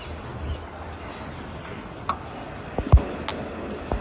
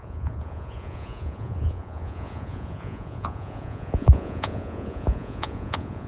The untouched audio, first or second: first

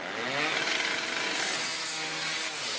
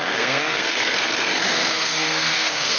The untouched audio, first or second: first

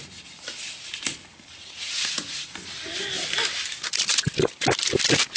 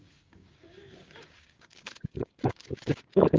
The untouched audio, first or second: first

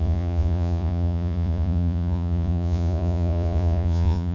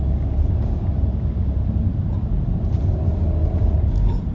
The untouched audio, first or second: second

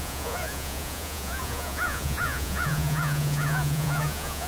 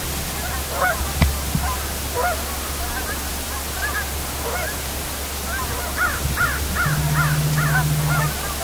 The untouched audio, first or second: second